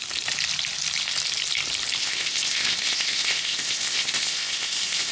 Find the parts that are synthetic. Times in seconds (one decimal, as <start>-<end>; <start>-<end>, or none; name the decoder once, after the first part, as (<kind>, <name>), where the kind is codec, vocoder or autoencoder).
2.0-5.1 (codec, ZipCodec)